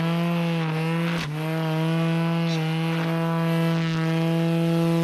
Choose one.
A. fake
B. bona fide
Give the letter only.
B